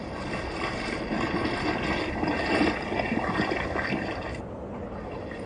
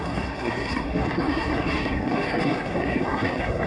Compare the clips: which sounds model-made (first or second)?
second